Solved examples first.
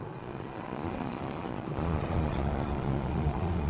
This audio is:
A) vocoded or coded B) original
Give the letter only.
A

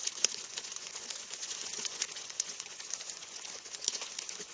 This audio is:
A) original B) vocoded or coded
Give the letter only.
B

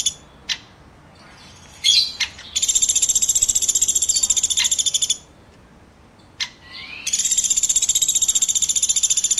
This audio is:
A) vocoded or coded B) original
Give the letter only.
B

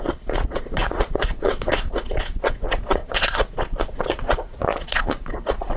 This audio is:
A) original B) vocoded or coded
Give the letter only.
B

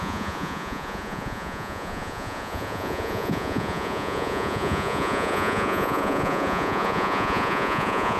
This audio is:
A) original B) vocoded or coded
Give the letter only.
B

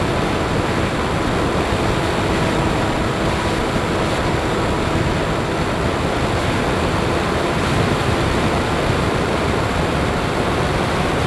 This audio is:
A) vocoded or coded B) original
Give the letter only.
B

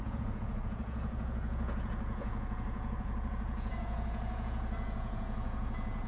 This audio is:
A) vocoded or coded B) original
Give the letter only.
A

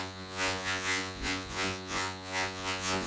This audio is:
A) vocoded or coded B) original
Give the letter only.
A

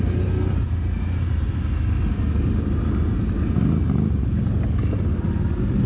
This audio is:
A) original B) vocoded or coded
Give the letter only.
A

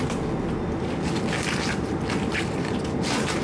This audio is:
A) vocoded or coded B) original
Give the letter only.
B